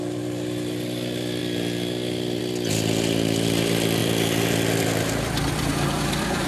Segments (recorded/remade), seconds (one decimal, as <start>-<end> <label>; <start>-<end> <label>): 0.0-4.0 recorded; 4.0-6.5 remade